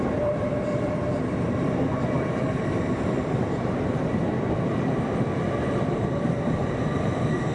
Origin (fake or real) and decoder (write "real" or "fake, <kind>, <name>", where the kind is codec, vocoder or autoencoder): fake, vocoder, BigVGAN v2